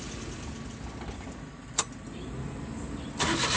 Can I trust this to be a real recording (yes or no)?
yes